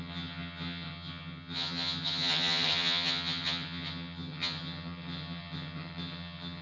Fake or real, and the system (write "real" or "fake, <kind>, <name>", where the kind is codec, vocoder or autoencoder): fake, vocoder, HiFi-GAN